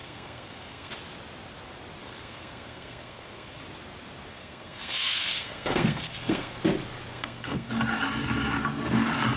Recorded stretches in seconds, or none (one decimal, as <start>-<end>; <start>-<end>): 0.9-2.0; 3.6-4.3; 6.6-7.1; 7.7-9.4